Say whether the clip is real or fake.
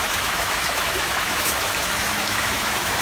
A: fake